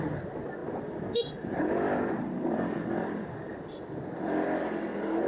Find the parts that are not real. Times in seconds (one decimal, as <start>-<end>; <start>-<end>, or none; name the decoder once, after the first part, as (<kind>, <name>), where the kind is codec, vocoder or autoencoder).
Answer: 0.6-3.8 (vocoder, BigVGAN v2)